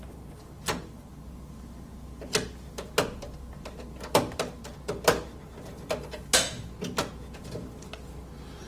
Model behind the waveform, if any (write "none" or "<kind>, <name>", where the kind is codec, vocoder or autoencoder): none